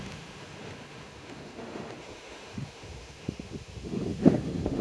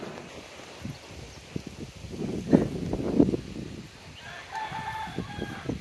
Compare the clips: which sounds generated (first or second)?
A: first